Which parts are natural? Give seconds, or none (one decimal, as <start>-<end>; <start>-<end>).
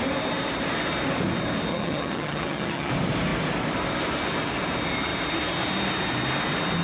0.0-1.7; 2.9-6.8